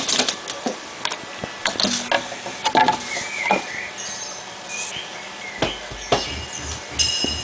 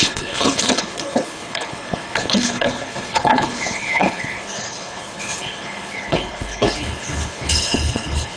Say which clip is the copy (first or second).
second